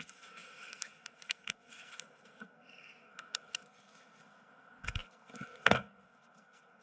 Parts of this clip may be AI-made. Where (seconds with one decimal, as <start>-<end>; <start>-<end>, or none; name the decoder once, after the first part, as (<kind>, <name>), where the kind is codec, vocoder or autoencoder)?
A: 0.0-6.8 (codec, SNAC)